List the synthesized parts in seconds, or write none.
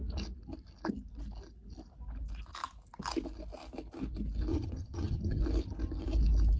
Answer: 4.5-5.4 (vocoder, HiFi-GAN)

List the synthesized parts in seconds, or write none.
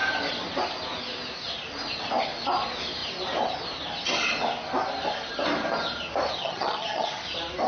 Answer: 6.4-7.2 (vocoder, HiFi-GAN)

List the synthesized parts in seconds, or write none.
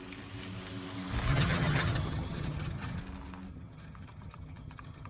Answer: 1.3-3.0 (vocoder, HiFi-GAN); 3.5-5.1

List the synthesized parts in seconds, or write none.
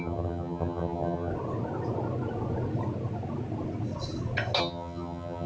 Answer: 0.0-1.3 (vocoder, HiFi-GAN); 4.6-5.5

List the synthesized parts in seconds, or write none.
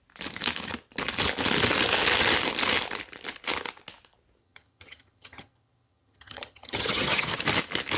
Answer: 4.4-7.4 (vocoder, HiFi-GAN)